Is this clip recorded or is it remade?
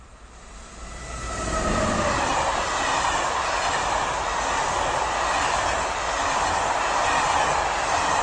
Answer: recorded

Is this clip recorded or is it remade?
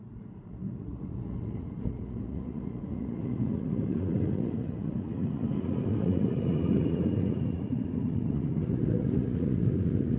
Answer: remade